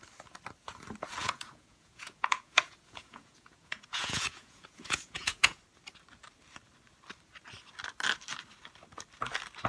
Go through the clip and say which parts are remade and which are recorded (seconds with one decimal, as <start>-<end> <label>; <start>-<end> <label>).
0.0-1.2 recorded; 1.2-5.6 remade; 5.6-9.7 recorded